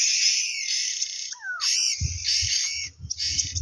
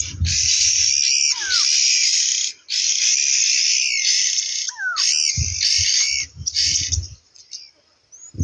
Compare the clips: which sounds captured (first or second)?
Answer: second